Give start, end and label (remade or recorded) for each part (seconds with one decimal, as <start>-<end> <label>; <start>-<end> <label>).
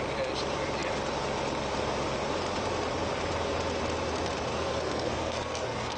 0.0-4.5 recorded; 4.5-6.0 remade